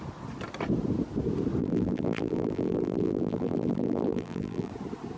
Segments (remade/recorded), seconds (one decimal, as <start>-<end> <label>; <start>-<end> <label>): 0.0-1.6 recorded; 1.6-4.7 remade; 4.7-5.2 recorded